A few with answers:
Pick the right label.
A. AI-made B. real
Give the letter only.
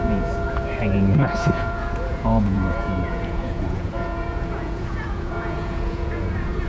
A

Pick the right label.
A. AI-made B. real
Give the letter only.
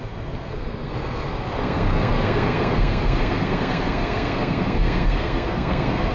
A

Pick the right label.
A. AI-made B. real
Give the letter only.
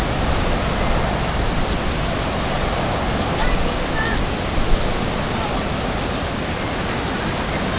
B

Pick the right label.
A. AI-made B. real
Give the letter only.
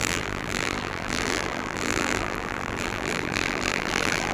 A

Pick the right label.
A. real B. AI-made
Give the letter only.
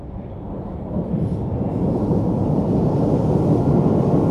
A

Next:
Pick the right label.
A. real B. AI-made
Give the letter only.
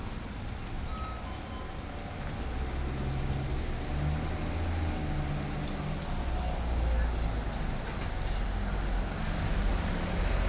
A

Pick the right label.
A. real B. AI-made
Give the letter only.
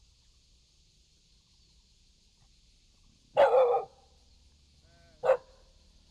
A